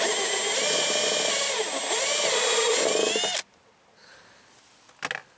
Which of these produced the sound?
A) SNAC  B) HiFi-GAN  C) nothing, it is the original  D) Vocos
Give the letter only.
C